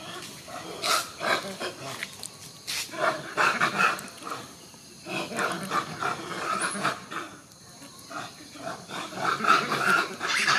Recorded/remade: recorded